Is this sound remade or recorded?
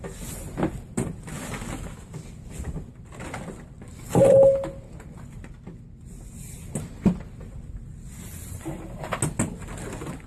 recorded